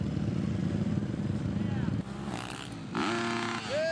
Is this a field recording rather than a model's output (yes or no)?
yes